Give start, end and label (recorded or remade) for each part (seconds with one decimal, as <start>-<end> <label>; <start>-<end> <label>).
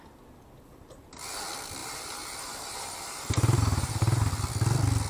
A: 0.0-1.8 recorded; 1.8-4.3 remade; 4.3-5.1 recorded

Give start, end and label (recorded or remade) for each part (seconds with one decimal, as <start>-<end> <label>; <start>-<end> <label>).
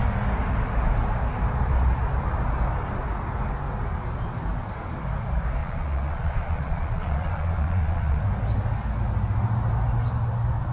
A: 0.0-5.6 recorded; 5.6-8.2 remade; 8.2-10.7 recorded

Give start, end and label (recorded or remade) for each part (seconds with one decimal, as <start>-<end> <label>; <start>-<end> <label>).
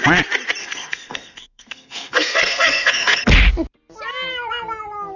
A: 0.0-0.6 recorded; 0.6-3.3 remade; 3.3-5.2 recorded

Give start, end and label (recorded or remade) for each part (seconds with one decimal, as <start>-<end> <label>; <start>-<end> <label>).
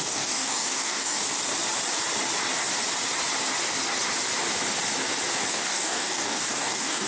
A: 0.0-1.2 remade; 1.2-5.5 recorded; 5.5-7.1 remade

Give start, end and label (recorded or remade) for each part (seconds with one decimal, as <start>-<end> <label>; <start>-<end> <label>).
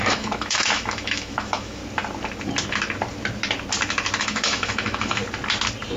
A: 0.0-1.8 remade; 1.8-4.2 recorded; 4.2-5.2 remade; 5.2-6.0 recorded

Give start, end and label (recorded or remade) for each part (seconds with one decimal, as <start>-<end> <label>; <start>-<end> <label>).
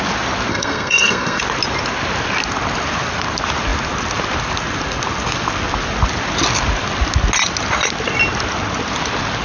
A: 0.0-0.5 recorded; 0.5-1.4 remade; 1.4-9.4 recorded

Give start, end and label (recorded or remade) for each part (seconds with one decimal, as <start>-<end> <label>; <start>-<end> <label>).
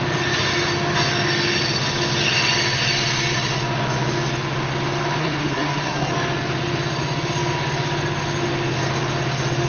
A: 0.0-5.2 recorded; 5.2-6.1 remade; 6.1-9.7 recorded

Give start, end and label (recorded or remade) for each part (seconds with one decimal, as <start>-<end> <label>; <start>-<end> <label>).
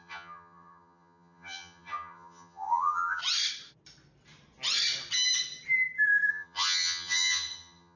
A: 0.0-3.2 remade; 3.2-6.3 recorded; 6.3-8.0 remade